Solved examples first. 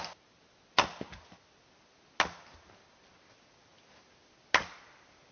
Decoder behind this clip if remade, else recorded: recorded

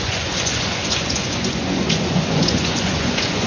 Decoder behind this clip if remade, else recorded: remade, vocoder, Vocos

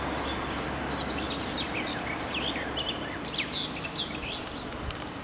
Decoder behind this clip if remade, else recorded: recorded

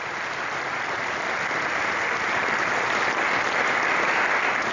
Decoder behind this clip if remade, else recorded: recorded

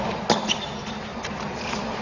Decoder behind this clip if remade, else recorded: recorded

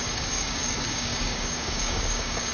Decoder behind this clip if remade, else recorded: remade, codec, DAC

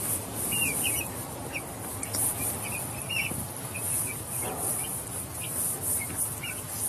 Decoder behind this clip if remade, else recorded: recorded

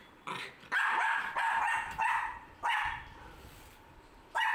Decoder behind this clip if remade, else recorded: remade, vocoder, BigVGAN v2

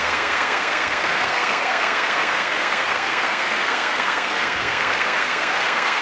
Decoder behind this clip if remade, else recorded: remade, codec, SNAC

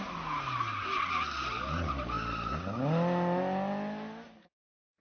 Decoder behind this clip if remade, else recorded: recorded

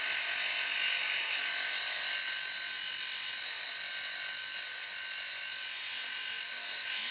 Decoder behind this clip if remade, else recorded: recorded